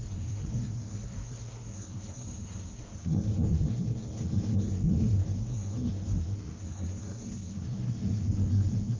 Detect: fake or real fake